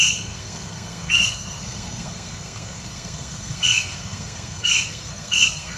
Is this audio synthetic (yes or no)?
yes